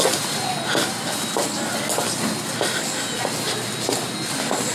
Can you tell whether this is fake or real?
real